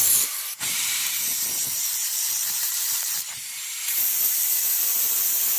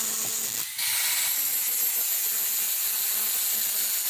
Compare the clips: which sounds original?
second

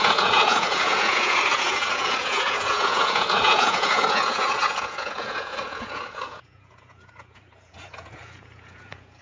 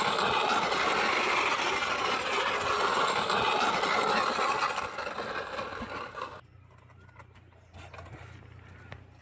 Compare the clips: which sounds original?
second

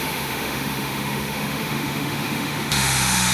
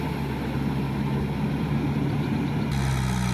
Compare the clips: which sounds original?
second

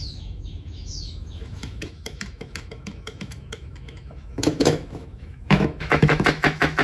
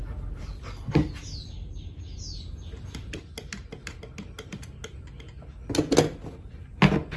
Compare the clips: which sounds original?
second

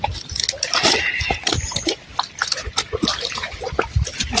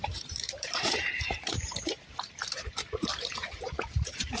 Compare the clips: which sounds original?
first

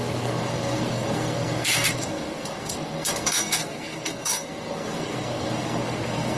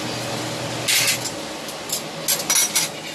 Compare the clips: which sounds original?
second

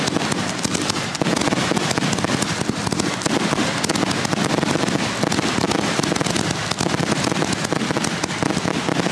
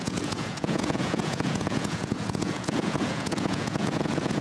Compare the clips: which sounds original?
first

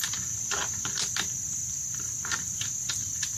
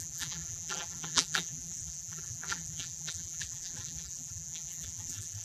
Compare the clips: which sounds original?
first